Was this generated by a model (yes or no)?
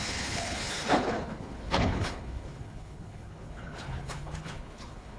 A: yes